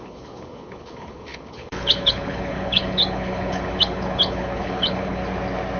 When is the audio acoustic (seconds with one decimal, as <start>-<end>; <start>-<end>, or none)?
5.2-5.8